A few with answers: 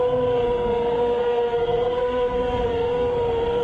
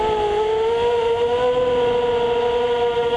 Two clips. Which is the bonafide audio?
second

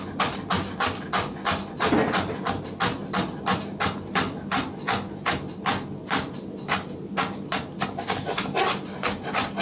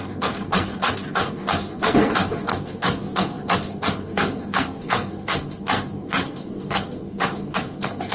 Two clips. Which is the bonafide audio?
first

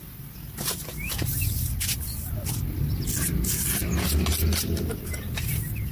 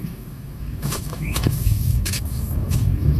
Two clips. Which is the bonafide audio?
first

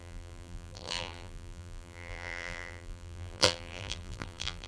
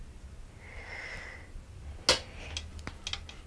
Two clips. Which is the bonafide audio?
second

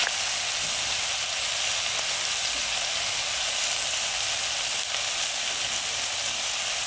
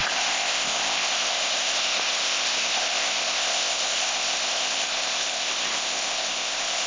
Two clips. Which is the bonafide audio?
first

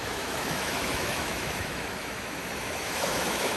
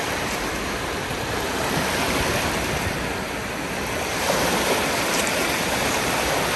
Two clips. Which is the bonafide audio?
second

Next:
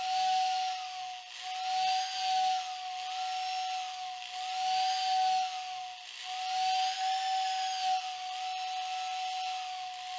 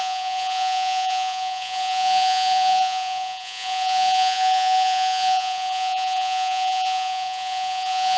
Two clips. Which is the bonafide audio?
first